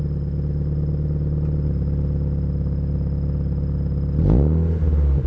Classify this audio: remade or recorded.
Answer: recorded